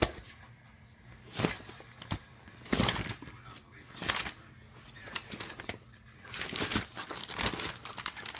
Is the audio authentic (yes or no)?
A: yes